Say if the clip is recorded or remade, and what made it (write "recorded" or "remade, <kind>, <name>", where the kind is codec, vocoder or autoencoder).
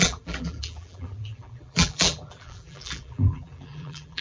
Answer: remade, vocoder, BigVGAN v2